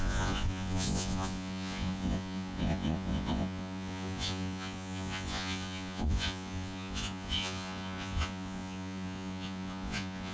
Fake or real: fake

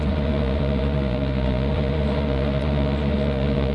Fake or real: fake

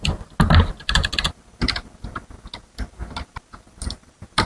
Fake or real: real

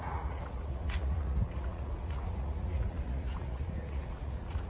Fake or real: fake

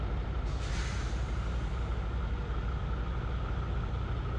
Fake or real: real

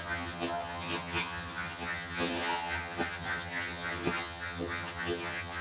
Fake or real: fake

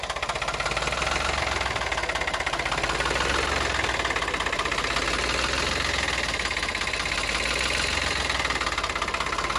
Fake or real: real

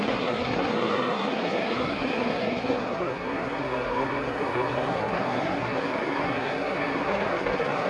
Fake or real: fake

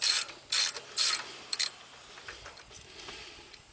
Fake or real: real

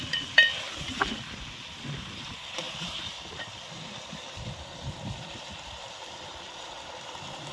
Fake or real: fake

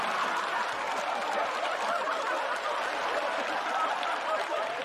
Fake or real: real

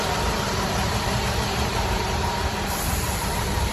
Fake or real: fake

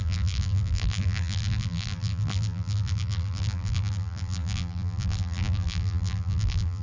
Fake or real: fake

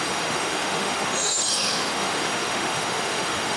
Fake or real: fake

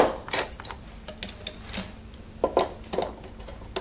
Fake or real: real